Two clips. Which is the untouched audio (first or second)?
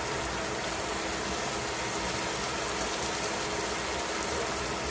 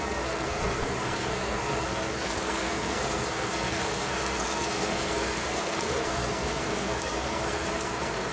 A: first